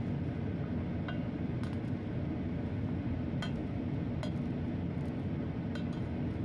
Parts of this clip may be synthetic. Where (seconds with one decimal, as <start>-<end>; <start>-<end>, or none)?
none